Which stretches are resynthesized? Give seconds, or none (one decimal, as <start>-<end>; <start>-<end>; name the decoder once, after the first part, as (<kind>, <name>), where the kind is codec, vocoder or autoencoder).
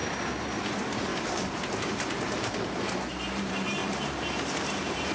0.7-5.1 (vocoder, BigVGAN v2)